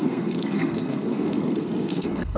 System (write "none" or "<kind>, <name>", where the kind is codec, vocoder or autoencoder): codec, SNAC